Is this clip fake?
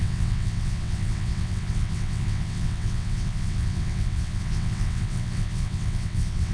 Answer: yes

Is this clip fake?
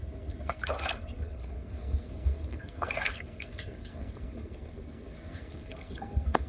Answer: yes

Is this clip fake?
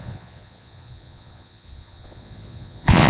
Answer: yes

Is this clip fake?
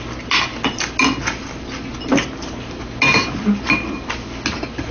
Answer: no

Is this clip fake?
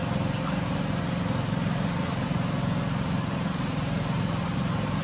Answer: no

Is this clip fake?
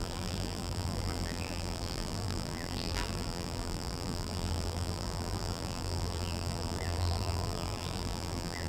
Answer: yes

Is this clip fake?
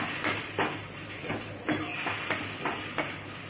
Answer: no